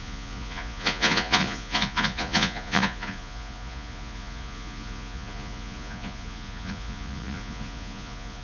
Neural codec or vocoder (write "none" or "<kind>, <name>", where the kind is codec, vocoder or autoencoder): vocoder, Vocos